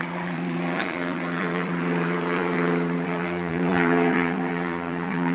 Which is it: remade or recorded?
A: remade